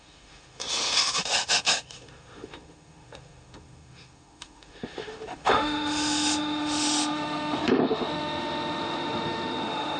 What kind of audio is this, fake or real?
fake